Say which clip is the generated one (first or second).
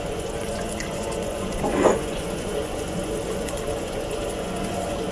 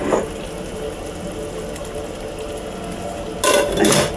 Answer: first